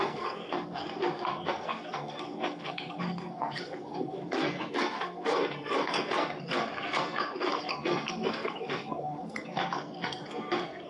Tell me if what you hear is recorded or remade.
remade